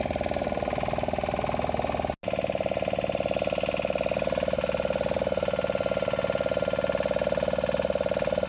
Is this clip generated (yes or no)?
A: no